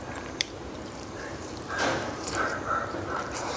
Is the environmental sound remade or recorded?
remade